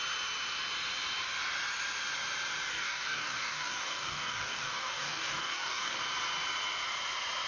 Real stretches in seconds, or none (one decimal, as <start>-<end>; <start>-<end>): 0.0-2.7; 6.0-7.5